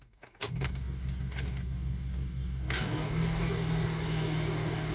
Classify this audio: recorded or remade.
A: remade